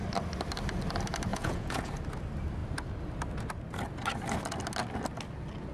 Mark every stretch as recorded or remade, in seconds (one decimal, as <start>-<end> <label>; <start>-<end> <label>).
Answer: 0.0-1.3 recorded; 1.3-1.9 remade; 1.9-5.7 recorded